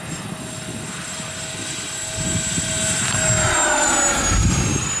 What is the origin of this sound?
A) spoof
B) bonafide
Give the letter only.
B